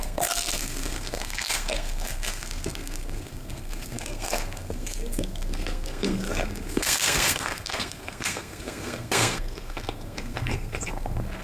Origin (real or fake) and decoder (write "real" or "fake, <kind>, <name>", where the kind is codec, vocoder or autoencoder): fake, codec, SNAC